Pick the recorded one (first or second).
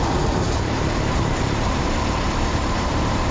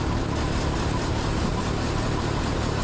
second